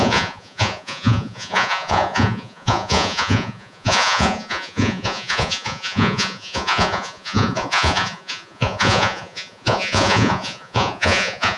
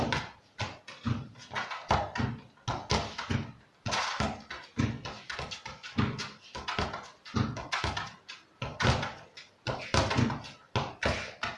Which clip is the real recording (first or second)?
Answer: second